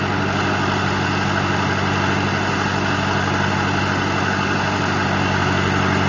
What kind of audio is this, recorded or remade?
recorded